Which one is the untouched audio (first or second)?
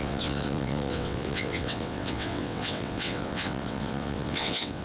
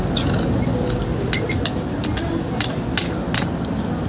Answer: second